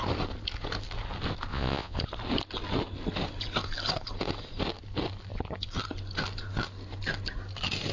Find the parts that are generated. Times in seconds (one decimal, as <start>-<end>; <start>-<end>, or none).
1.5-2.0